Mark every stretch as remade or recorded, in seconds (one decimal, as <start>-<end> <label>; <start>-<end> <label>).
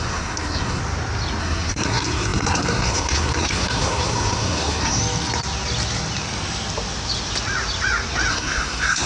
0.0-0.8 remade; 0.8-1.4 recorded; 1.4-5.0 remade; 5.0-8.3 recorded; 8.3-9.1 remade